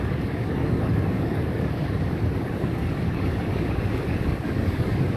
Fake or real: fake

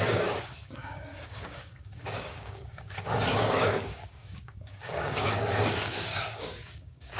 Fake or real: fake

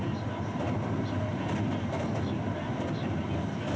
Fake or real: real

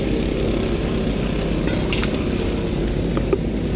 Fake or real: real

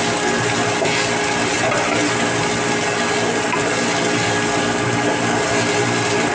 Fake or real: real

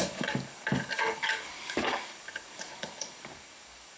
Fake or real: fake